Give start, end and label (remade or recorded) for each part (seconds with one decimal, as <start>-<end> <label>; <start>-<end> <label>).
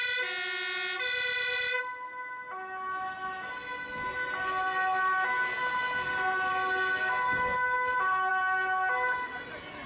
0.0-9.9 recorded